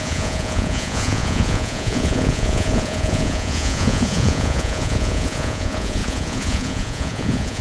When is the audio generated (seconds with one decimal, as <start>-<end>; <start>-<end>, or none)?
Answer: 0.0-7.6